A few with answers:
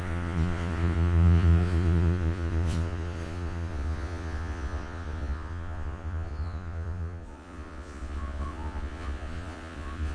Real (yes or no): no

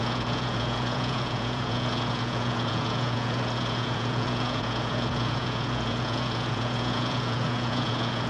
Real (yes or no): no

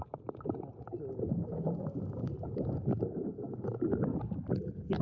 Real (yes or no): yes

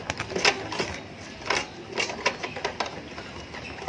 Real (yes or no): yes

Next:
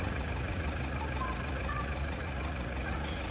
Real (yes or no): no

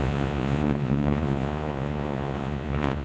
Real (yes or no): no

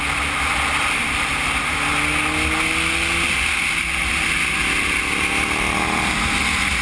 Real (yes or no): yes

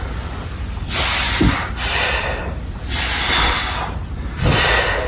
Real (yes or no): yes